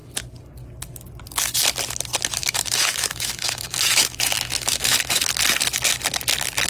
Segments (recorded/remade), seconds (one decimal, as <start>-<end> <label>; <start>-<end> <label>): 0.0-2.4 recorded; 2.4-5.3 remade; 5.3-6.7 recorded